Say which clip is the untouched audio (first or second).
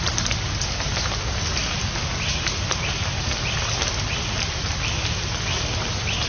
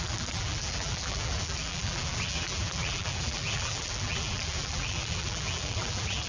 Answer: first